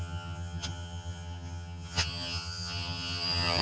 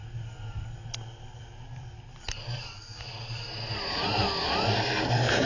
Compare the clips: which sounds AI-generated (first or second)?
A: first